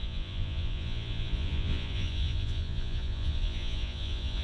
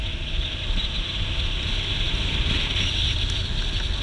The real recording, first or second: second